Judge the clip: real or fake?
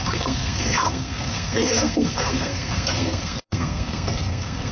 fake